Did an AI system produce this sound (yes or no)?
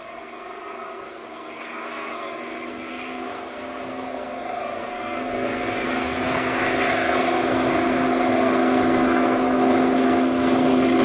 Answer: yes